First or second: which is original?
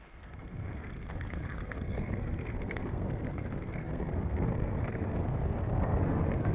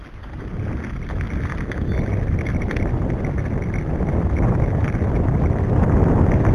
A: second